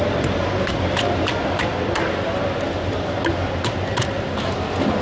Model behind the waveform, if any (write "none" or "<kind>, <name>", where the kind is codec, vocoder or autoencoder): none